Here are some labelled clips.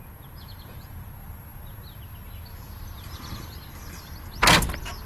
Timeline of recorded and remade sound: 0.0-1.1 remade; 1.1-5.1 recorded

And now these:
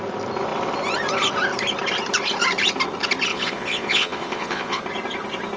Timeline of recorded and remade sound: 0.0-3.3 recorded; 3.3-4.8 remade; 4.8-5.6 recorded

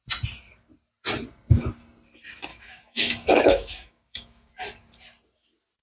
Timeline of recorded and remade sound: 0.0-2.5 recorded; 2.5-4.5 remade; 4.5-5.8 recorded

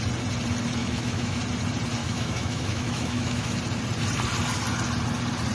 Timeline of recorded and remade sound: 0.0-0.8 recorded; 0.8-1.4 remade; 1.4-2.0 recorded; 2.0-3.6 remade; 3.6-5.5 recorded

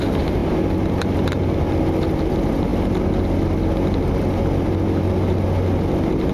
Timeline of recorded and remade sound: 0.0-6.3 recorded

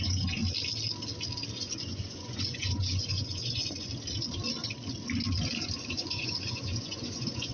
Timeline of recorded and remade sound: 0.0-0.4 remade; 0.4-1.5 recorded; 1.5-3.9 remade; 3.9-5.9 recorded; 5.9-7.5 remade